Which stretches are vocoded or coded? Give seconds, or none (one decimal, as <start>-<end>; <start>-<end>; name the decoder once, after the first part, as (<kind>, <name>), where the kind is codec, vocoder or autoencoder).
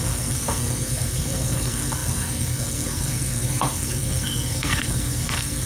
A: 0.0-5.7 (codec, SNAC)